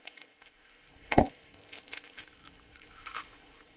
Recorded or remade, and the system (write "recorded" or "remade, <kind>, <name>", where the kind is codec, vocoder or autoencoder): remade, codec, ZipCodec